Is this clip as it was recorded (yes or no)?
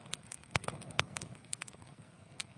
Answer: no